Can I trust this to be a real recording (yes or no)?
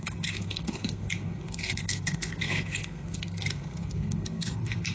no